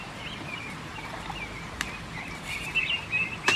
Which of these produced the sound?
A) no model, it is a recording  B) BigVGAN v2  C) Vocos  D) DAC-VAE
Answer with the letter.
A